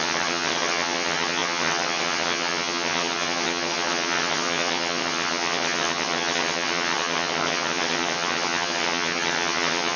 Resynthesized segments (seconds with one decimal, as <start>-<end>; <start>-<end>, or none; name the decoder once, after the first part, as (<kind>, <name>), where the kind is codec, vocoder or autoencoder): 0.0-10.0 (vocoder, HiFi-GAN)